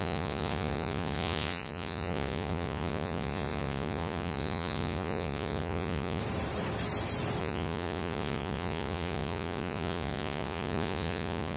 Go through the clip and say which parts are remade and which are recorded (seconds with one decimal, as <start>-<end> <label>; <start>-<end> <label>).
0.0-6.2 remade; 6.2-7.4 recorded; 7.4-11.6 remade

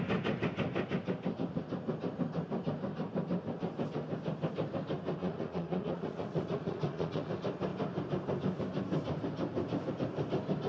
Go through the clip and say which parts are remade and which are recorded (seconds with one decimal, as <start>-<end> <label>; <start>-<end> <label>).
0.0-5.2 recorded; 5.2-7.3 remade; 7.3-10.7 recorded

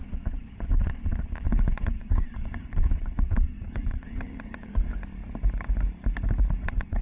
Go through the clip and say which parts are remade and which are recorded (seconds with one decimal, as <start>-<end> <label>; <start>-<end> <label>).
0.0-4.9 remade; 4.9-6.6 recorded; 6.6-7.0 remade

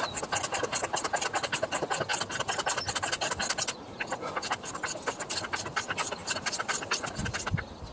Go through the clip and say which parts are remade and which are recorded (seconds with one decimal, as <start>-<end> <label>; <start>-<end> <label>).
0.0-7.9 recorded

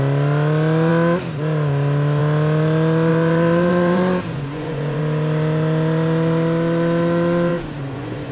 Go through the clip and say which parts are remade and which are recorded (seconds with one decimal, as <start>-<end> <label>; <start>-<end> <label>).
0.0-3.1 recorded; 3.1-5.0 remade; 5.0-7.5 recorded; 7.5-8.3 remade

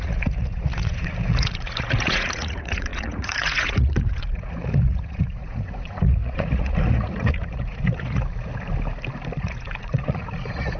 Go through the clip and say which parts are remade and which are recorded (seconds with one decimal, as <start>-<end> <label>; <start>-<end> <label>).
0.0-8.5 remade; 8.5-9.4 recorded; 9.4-10.8 remade

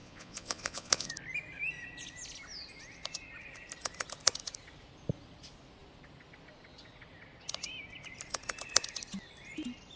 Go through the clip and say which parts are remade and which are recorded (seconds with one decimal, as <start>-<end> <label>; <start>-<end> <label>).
0.0-1.1 remade; 1.1-10.0 recorded

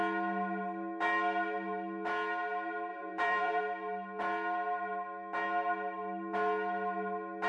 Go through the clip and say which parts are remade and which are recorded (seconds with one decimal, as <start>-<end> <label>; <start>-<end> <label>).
0.0-2.9 recorded; 2.9-3.6 remade; 3.6-7.5 recorded